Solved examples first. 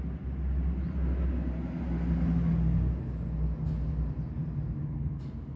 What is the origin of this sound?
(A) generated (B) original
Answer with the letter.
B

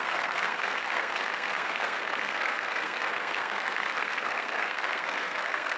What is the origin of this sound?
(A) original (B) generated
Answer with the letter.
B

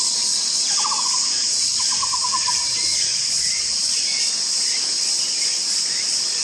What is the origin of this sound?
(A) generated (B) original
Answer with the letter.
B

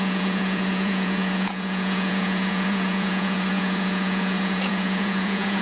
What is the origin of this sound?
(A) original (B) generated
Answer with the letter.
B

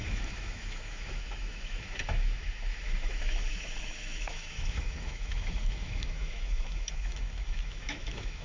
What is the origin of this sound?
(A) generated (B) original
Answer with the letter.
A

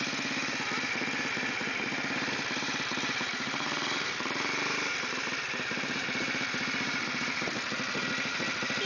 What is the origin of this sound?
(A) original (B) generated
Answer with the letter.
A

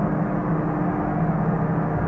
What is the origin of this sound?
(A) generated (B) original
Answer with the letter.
B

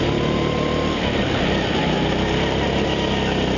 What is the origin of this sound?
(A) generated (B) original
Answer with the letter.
B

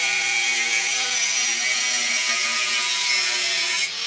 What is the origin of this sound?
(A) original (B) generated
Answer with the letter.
A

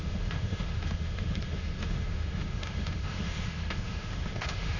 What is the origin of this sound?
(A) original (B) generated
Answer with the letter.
B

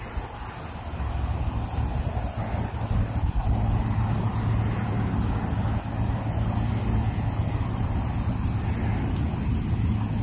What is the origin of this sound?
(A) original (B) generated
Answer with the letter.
A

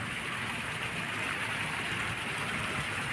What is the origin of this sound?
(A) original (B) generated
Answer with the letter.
A